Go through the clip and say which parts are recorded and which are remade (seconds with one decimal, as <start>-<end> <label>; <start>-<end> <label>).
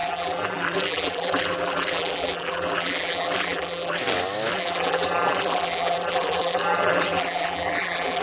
0.0-4.0 remade; 4.0-4.5 recorded; 4.5-8.2 remade